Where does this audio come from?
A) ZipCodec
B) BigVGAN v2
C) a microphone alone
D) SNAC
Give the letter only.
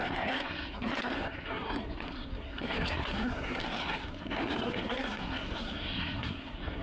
D